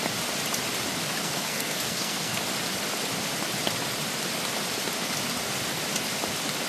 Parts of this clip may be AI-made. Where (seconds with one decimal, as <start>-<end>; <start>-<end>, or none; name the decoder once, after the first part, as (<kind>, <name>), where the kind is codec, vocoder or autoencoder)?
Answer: 1.2-2.4 (codec, SNAC)